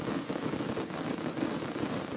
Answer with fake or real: real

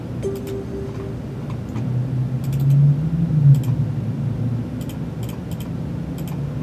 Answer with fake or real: real